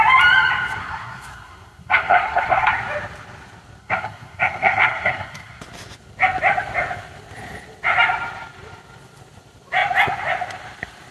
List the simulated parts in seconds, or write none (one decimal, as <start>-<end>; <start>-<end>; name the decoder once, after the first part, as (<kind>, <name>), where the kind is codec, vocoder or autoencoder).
0.8-2.7 (codec, SNAC); 3.8-5.6